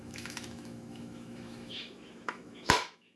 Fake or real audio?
fake